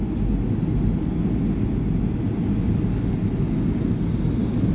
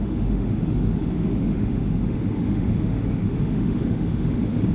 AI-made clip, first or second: second